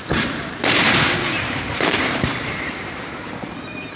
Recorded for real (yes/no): no